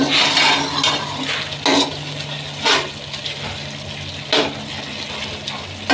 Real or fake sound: real